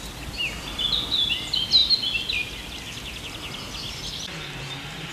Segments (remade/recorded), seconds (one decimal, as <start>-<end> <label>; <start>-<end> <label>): 0.0-5.1 recorded